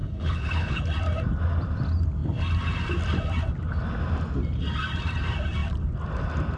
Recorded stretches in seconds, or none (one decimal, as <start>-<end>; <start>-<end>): 0.8-6.6